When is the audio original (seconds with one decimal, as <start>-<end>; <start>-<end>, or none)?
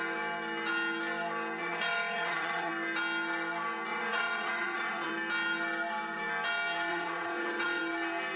0.0-1.6; 2.7-3.9; 5.1-6.9; 7.8-8.4